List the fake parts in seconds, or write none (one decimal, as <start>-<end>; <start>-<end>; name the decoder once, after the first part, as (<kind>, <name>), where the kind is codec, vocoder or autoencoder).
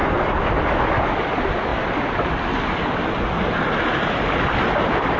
none